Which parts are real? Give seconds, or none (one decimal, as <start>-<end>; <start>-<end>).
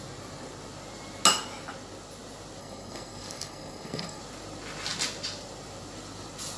0.0-2.6; 4.2-6.6